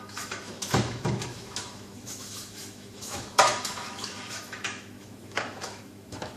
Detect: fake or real fake